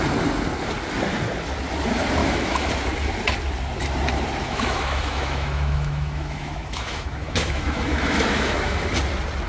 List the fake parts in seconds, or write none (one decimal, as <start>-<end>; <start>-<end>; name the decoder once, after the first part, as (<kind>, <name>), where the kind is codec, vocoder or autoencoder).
2.2-2.7 (autoencoder, DAC-VAE); 4.4-8.9